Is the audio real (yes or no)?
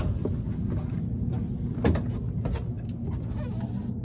yes